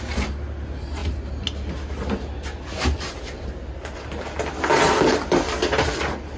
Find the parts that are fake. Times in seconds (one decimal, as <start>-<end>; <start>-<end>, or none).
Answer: none